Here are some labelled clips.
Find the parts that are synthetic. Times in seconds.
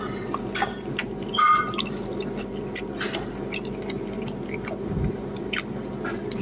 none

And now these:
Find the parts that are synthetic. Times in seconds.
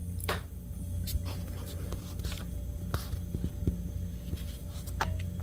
none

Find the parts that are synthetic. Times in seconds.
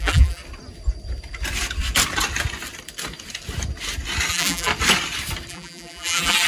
0.0-0.4 (vocoder, BigVGAN v2); 4.3-4.7; 5.5-6.5